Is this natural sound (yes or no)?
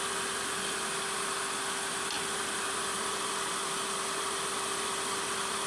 yes